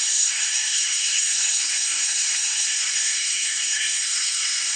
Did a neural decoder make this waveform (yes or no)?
yes